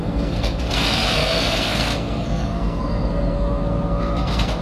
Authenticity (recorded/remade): remade